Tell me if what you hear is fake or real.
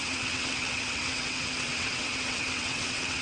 fake